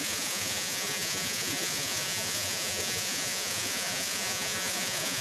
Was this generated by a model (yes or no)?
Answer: yes